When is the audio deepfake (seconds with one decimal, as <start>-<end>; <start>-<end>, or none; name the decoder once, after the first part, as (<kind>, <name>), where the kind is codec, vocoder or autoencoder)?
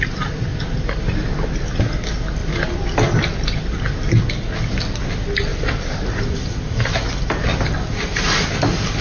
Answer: 2.4-4.2 (vocoder, BigVGAN v2); 5.5-6.7